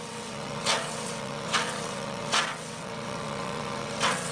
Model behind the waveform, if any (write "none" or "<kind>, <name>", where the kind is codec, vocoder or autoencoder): vocoder, WaveNeXt